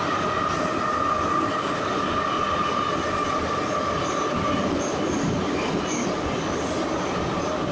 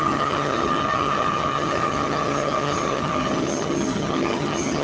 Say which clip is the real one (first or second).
first